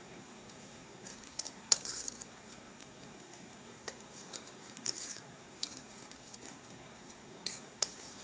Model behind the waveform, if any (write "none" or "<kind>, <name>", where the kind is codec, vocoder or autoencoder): codec, SNAC